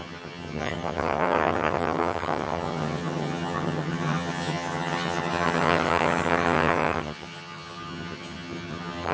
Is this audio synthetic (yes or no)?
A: yes